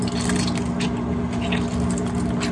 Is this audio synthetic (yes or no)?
no